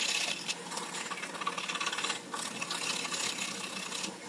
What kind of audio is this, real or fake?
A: real